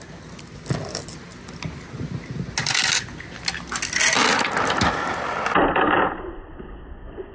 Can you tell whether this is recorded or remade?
recorded